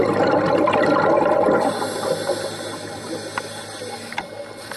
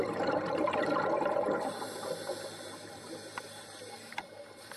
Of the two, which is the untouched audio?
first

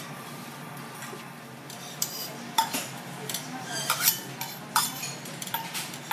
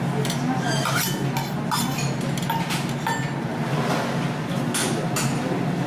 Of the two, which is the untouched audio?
second